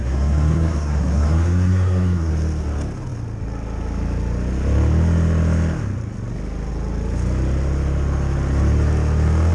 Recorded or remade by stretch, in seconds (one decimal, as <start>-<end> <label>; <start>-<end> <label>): 0.0-2.3 remade; 2.3-9.5 recorded